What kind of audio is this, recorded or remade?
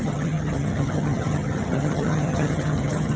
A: remade